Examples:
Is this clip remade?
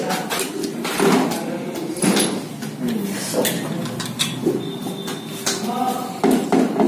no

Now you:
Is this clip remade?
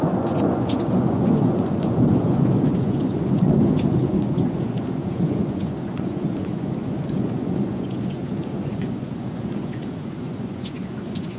yes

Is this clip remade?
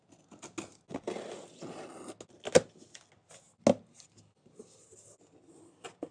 no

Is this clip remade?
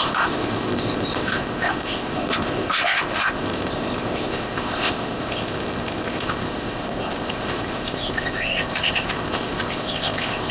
yes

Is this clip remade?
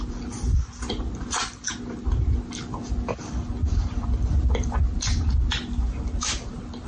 no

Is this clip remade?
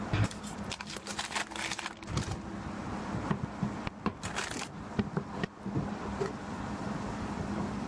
no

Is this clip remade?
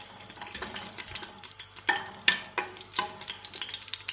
no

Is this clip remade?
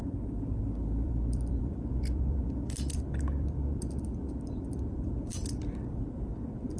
yes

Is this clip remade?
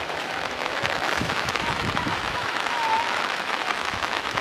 yes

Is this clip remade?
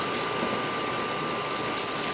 no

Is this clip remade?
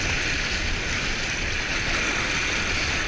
no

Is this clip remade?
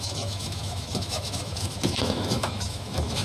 yes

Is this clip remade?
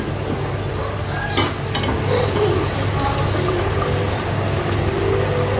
no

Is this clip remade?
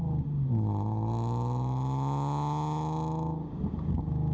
no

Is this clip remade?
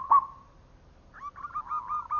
no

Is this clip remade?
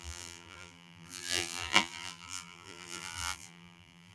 yes